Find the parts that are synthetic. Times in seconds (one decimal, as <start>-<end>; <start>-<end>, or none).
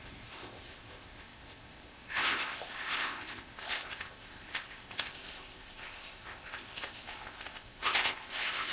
0.0-8.7